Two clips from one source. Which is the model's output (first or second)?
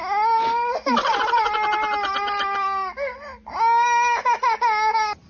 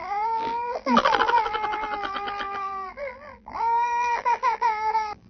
second